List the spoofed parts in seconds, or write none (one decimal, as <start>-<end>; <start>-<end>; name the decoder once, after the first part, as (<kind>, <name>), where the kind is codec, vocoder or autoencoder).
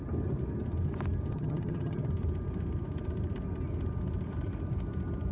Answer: 1.3-2.1 (vocoder, HiFi-GAN)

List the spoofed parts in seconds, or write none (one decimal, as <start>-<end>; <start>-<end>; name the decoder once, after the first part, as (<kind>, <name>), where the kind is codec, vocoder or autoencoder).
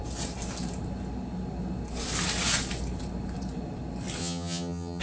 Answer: 4.2-5.0 (vocoder, HiFi-GAN)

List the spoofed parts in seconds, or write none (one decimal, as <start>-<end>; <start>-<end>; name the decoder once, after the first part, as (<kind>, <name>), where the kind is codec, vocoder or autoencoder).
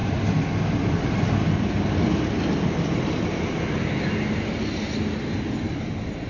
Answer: none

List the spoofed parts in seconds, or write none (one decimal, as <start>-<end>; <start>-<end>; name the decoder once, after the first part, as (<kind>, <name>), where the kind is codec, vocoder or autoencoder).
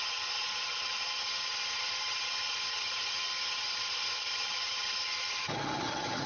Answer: 0.0-6.3 (vocoder, HiFi-GAN)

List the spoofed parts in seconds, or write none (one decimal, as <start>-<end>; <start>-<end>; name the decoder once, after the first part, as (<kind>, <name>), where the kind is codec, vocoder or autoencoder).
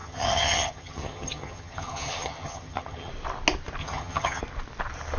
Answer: 0.0-3.1 (vocoder, HiFi-GAN); 3.8-4.4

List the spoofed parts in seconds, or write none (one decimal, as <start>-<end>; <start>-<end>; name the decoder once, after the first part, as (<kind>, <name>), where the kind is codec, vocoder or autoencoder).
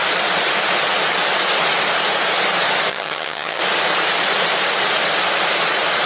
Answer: 2.9-3.6 (vocoder, HiFi-GAN)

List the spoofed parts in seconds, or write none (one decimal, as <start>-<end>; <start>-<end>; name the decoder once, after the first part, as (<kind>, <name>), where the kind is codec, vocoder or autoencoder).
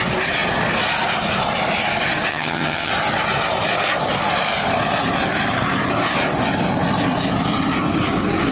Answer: 2.3-2.9 (vocoder, HiFi-GAN)